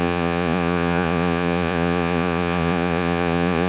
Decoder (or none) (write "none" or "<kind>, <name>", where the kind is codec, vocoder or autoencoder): vocoder, Vocos